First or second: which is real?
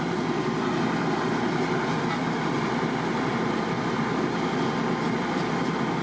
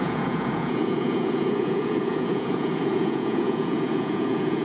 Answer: first